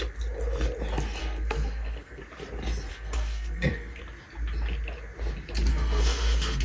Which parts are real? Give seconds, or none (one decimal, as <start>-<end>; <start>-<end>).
0.0-1.2; 2.2-2.9; 4.0-5.7